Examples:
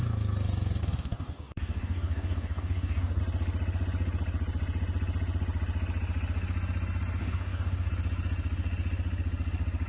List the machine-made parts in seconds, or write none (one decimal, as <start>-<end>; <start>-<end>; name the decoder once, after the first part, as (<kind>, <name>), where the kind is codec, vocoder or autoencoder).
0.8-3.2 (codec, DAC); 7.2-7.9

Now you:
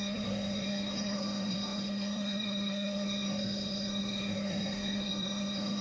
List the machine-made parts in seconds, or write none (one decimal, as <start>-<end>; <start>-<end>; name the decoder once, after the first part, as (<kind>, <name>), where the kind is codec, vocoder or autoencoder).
0.0-5.8 (codec, SNAC)

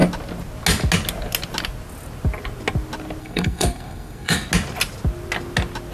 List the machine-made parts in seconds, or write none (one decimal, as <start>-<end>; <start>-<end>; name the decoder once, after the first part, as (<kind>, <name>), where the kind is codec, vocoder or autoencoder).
3.2-4.5 (codec, SNAC)